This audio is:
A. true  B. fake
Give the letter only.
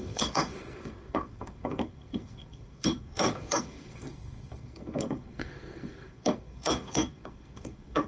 B